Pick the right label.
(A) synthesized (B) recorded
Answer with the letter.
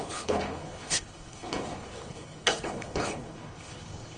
A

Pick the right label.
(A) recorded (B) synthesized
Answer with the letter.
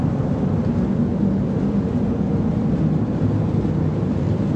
A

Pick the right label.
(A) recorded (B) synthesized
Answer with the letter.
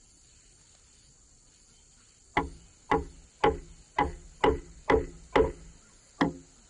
A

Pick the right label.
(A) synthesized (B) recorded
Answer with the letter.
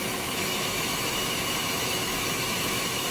A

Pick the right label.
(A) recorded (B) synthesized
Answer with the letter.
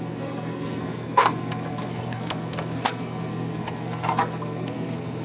B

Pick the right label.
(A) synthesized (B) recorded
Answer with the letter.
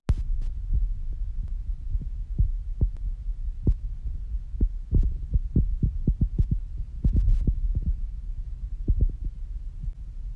B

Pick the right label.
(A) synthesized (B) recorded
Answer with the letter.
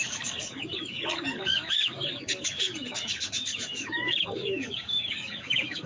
A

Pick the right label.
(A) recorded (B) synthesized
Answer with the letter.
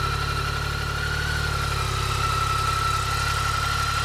A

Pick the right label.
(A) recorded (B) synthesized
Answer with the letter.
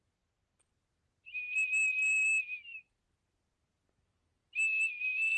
A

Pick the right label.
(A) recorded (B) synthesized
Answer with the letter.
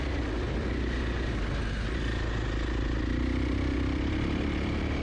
A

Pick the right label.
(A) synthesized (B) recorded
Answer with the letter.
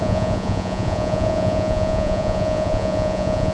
A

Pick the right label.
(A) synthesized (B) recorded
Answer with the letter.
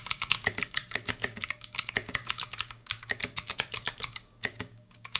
A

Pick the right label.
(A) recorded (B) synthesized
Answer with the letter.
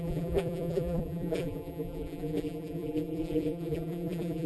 B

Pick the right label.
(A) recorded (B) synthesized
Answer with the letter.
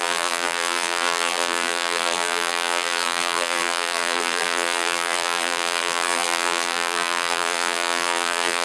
B